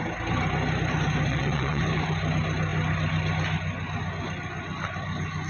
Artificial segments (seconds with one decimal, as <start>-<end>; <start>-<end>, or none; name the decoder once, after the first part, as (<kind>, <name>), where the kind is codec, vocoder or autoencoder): 1.3-1.8 (vocoder, WaveNeXt)